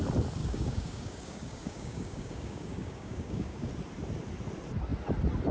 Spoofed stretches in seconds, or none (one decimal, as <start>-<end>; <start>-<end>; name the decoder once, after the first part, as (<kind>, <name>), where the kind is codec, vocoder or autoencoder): 0.4-3.7 (codec, DAC)